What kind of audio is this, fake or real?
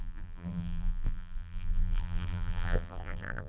fake